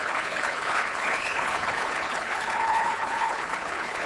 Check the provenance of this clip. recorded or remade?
remade